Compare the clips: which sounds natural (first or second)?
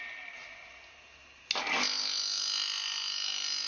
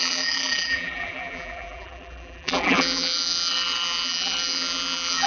first